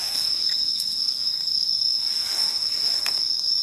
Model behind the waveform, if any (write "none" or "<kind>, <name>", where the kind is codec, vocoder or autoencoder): codec, SNAC